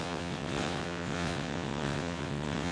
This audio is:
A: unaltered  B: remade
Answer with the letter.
B